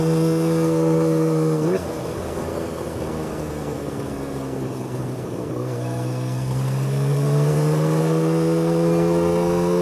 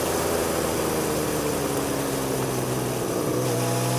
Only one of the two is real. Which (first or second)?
second